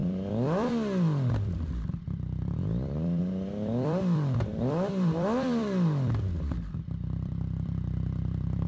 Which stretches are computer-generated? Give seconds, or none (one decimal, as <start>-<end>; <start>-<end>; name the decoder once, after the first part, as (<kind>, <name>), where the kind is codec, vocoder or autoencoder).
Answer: 0.0-8.7 (vocoder, BigVGAN v2)